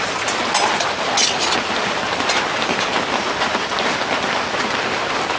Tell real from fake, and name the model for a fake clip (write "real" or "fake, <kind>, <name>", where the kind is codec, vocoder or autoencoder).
real